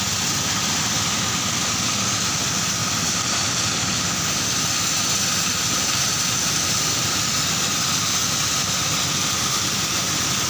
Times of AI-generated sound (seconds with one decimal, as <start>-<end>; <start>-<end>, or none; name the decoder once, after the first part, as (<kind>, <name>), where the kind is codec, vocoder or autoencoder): 2.8-4.1 (vocoder, BigVGAN v2); 5.5-7.3